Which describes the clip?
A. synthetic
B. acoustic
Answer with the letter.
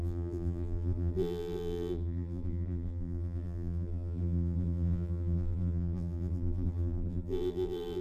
A